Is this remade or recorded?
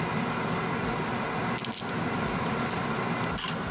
recorded